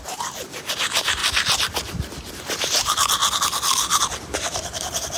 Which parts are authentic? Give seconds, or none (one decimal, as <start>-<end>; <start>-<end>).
1.2-2.3; 3.2-4.2